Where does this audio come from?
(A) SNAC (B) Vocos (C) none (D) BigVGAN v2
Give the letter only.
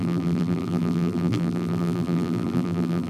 D